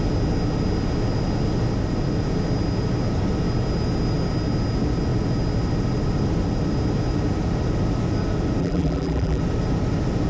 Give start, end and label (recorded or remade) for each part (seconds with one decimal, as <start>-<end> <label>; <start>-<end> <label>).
0.0-8.6 recorded; 8.6-9.4 remade; 9.4-10.3 recorded